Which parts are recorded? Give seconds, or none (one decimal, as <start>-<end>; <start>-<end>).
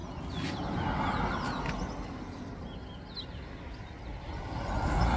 0.0-5.2